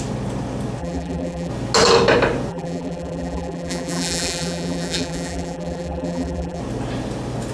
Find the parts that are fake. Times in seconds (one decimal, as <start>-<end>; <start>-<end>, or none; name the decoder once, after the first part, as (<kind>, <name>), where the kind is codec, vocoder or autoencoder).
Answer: 0.8-1.5 (vocoder, BigVGAN v2); 2.5-6.6